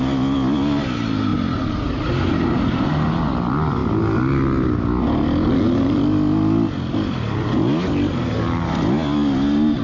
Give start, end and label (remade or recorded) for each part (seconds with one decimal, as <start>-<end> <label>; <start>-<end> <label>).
0.0-9.8 recorded